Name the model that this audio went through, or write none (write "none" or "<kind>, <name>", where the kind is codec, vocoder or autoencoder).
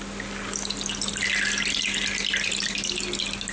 none